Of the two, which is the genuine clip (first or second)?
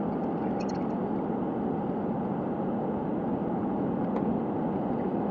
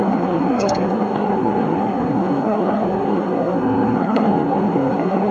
first